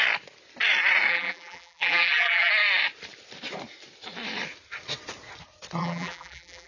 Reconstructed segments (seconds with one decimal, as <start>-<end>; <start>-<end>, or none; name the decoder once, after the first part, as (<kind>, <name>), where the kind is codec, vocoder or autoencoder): 1.1-2.5 (vocoder, BigVGAN v2); 5.8-6.7